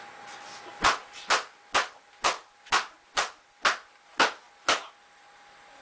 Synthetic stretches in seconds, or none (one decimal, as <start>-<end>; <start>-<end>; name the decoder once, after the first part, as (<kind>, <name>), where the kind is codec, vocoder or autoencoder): none